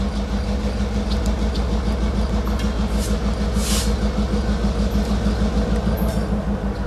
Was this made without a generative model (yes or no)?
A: yes